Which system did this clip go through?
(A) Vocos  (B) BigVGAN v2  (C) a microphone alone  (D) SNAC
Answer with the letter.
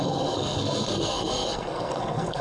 D